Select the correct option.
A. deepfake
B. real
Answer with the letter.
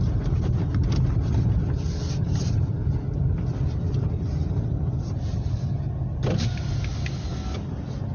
B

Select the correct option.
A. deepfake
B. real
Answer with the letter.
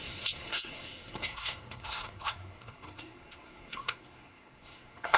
A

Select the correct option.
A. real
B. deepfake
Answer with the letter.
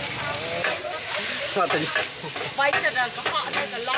A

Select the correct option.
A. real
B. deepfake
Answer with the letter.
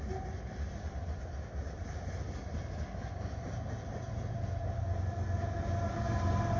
A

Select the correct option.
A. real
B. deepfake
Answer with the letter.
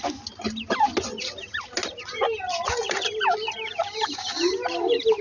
A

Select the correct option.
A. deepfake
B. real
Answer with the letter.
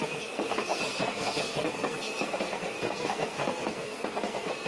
A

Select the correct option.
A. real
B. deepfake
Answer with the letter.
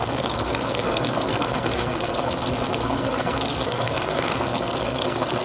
B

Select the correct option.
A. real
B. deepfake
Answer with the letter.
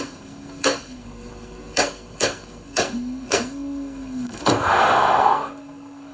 B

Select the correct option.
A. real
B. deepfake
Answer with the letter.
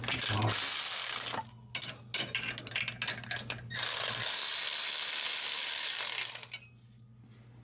A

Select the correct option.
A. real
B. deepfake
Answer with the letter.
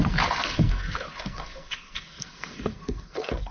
B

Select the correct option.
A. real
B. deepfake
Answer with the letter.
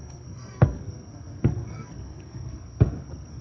B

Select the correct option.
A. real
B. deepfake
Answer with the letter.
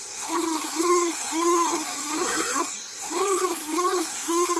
B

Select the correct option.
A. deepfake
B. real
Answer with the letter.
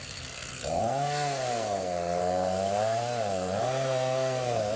A